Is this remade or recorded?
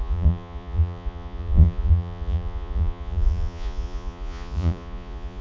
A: remade